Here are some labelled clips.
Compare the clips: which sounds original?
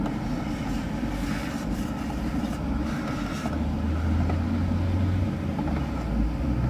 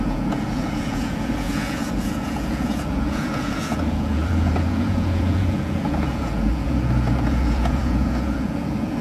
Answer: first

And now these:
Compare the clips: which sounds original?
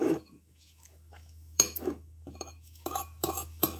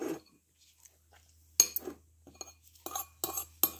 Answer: second